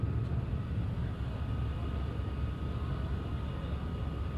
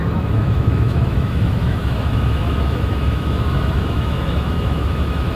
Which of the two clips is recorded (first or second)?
first